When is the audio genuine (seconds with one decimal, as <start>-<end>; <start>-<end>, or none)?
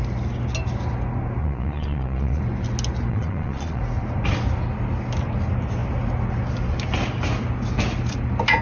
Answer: 0.0-1.4; 2.4-3.1; 3.8-8.6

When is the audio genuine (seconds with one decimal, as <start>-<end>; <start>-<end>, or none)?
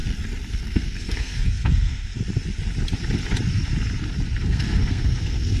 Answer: 0.0-0.5; 2.1-4.4